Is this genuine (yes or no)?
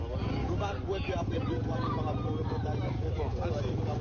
yes